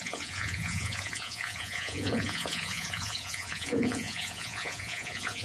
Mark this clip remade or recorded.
remade